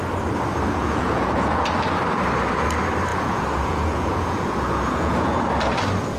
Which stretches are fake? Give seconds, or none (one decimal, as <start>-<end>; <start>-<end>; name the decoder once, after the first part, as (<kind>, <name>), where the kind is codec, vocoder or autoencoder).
0.8-1.6 (vocoder, Vocos); 3.1-5.4